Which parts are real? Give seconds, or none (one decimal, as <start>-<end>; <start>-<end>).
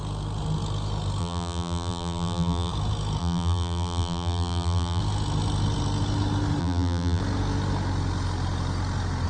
0.0-1.2; 2.7-3.2; 5.0-6.6; 7.2-9.3